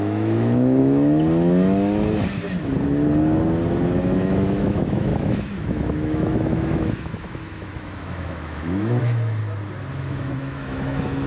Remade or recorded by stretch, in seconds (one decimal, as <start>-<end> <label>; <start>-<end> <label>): 0.0-0.8 remade; 0.8-4.0 recorded; 4.0-9.4 remade; 9.4-9.9 recorded; 9.9-11.3 remade